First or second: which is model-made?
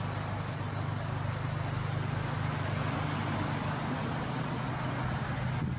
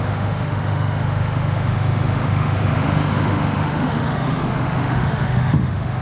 second